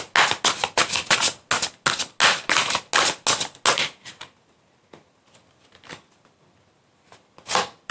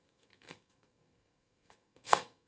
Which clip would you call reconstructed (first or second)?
second